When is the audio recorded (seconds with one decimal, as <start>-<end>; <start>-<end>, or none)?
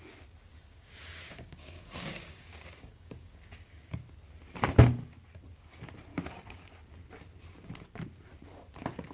0.0-0.5; 3.9-9.1